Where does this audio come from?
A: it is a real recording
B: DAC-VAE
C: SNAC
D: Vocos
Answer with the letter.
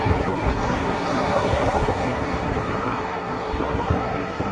C